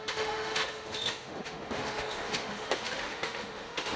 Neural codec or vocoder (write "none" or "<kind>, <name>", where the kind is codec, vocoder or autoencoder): autoencoder, DAC-VAE